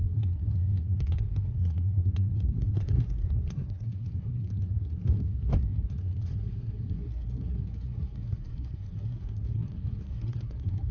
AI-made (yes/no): yes